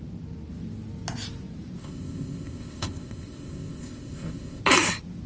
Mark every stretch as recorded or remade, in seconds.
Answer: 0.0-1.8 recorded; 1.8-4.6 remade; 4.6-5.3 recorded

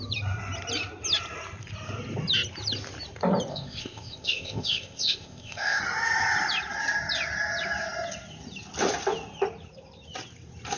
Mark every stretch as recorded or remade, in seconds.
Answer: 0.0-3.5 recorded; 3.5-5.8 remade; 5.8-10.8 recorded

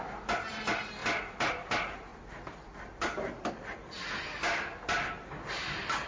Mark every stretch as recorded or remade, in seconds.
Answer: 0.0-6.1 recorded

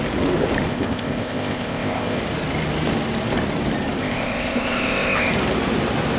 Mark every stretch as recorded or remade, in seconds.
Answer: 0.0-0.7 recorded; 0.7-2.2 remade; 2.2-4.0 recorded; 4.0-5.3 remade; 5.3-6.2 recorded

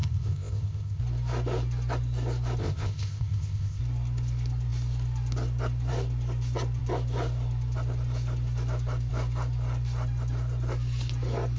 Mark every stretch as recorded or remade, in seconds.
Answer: 0.0-1.0 remade; 1.0-2.6 recorded; 2.6-3.8 remade; 3.8-11.6 recorded

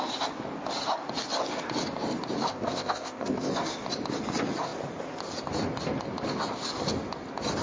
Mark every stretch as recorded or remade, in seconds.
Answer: 0.0-2.5 recorded; 2.5-3.5 remade; 3.5-7.6 recorded

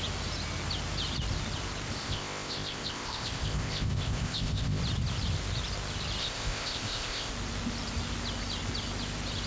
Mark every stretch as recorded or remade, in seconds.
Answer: 0.0-2.0 recorded; 2.0-4.8 remade; 4.8-6.2 recorded; 6.2-7.3 remade; 7.3-9.5 recorded